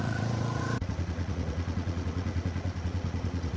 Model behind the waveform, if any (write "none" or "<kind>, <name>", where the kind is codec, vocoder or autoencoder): vocoder, Vocos